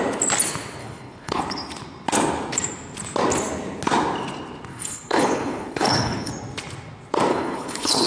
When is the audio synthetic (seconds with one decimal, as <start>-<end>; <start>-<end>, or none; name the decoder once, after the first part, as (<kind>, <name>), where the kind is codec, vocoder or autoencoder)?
0.8-1.4 (codec, HILCodec); 4.7-6.3; 7.3-8.1